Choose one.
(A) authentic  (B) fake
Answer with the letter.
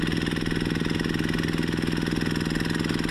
A